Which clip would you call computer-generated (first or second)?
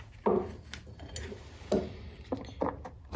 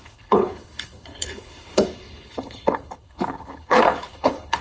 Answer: second